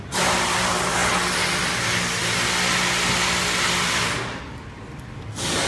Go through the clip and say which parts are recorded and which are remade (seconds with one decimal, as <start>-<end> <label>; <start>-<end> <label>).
0.0-5.7 recorded